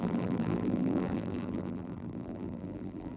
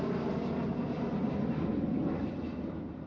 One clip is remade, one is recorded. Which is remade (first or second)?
first